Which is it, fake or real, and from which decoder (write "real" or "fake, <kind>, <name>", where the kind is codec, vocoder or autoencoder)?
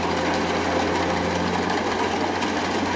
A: real